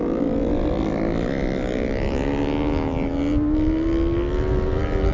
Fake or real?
real